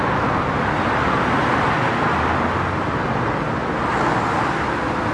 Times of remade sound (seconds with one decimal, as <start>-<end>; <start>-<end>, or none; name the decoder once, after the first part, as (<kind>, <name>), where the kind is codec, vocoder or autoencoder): none